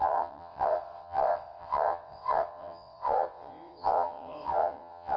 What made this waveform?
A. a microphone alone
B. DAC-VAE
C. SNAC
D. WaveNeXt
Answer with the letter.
D